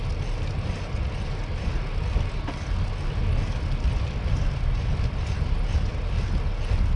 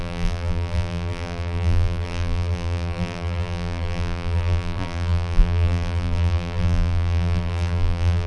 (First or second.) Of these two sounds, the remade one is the second